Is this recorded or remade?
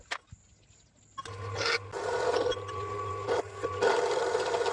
recorded